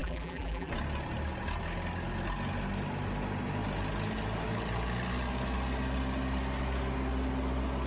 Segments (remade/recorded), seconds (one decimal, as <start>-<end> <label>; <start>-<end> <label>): 0.0-0.7 remade; 0.7-7.9 recorded